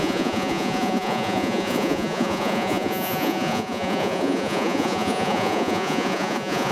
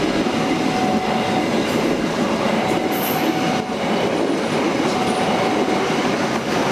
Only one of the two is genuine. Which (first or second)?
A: second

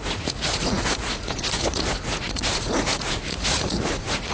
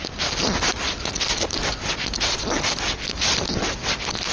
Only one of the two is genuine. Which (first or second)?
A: second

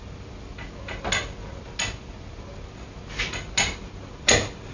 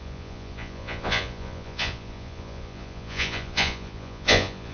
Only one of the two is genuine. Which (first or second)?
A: first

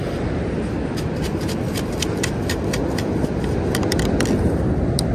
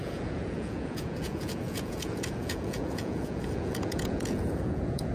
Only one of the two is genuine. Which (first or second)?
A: first